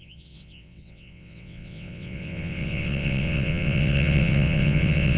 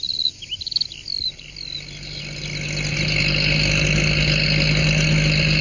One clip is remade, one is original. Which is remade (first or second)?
first